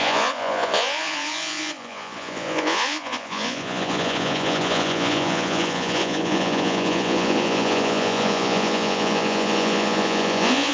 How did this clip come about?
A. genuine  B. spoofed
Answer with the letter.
B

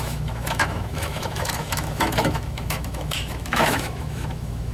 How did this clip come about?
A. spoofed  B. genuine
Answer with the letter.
A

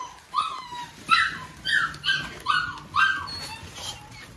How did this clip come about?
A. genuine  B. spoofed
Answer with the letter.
A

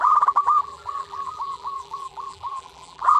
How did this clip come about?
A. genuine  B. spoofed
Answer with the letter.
B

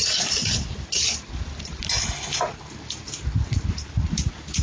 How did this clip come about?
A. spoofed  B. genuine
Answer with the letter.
B